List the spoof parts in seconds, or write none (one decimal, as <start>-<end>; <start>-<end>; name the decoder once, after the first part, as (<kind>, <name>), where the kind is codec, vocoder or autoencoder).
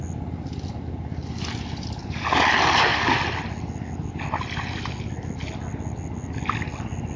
none